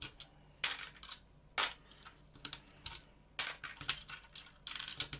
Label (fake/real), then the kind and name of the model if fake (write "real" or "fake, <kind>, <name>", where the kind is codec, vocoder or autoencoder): real